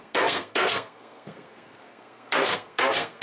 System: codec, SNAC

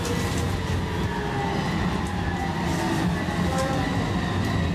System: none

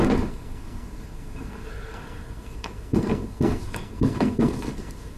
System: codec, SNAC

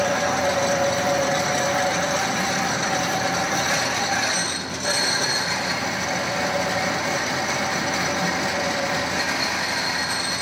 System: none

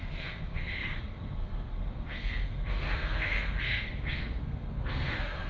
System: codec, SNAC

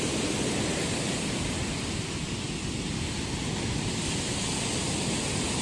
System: none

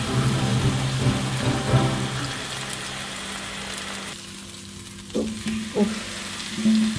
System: none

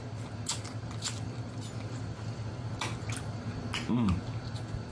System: none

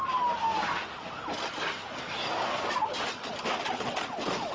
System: none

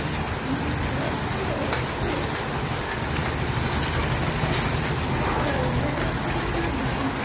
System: none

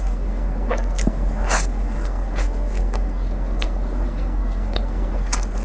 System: codec, SNAC